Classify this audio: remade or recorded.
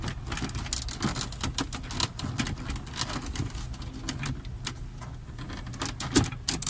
recorded